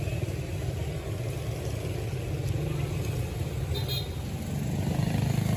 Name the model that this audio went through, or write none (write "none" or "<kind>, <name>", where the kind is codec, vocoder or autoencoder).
none